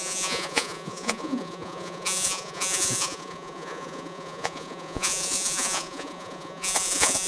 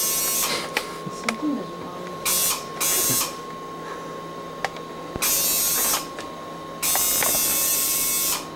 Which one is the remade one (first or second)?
first